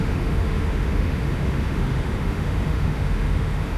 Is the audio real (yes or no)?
no